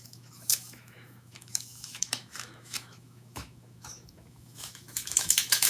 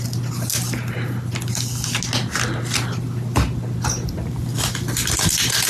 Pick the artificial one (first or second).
first